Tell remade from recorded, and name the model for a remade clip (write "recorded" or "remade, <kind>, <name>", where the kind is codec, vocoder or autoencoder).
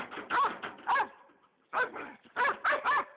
recorded